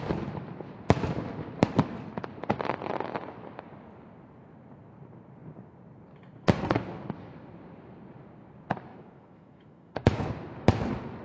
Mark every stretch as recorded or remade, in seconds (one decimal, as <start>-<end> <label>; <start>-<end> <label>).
0.0-8.9 recorded; 8.9-10.3 remade; 10.3-11.2 recorded